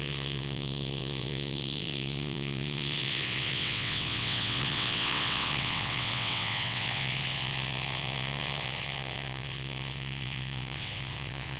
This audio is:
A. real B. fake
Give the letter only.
B